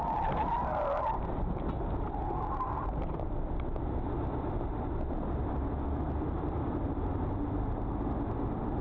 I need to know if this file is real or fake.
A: real